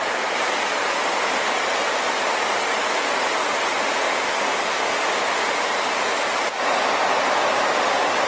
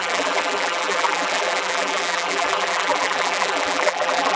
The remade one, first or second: second